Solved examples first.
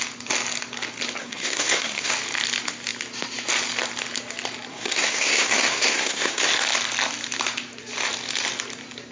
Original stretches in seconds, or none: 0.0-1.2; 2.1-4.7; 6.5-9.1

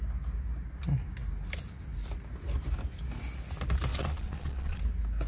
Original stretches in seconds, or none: 0.0-3.9; 4.8-5.3

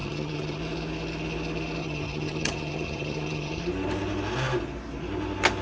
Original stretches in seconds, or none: 0.6-1.8; 3.6-5.6